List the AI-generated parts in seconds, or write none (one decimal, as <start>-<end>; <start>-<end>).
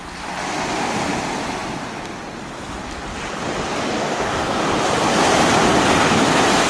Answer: 3.9-4.7